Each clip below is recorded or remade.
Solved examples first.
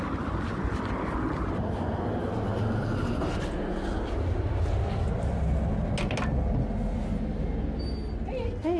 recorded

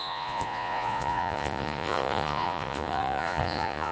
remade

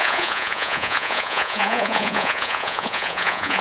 remade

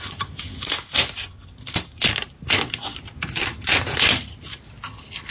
recorded